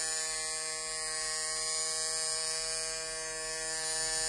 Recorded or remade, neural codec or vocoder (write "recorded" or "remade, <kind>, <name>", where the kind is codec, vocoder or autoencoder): recorded